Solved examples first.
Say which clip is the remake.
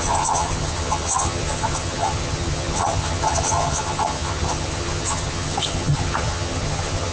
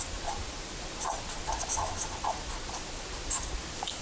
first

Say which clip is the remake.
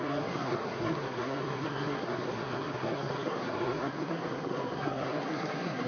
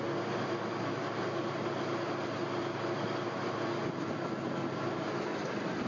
first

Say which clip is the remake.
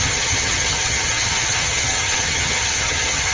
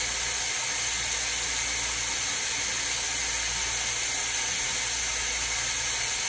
first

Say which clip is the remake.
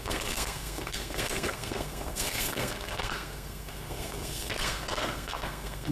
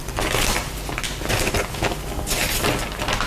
first